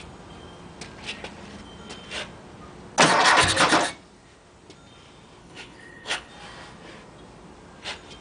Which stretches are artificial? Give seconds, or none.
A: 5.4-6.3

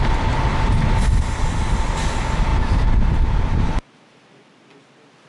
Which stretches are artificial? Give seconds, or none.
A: none